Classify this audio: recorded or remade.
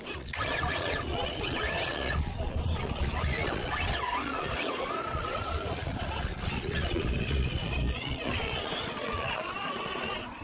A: remade